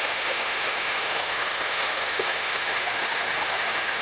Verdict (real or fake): fake